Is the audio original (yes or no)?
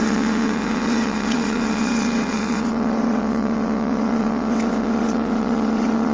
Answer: no